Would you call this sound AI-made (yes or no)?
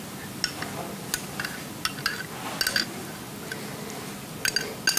no